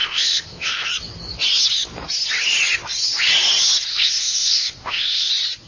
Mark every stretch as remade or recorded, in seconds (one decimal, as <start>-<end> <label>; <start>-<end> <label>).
0.0-0.9 remade; 0.9-3.9 recorded; 3.9-5.3 remade; 5.3-5.7 recorded